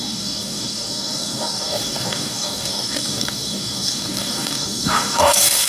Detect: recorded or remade remade